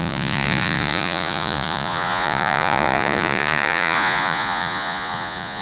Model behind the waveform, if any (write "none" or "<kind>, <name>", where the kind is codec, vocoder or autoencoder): vocoder, Vocos